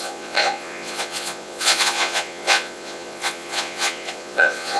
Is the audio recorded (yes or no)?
no